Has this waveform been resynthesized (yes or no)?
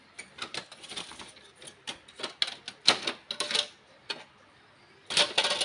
no